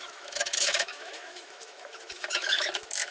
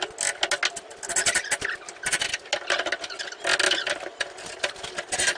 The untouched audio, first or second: second